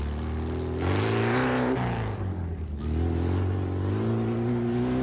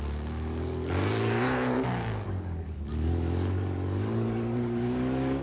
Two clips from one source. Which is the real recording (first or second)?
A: first